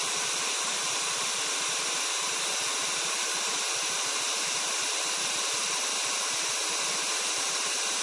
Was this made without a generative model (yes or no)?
yes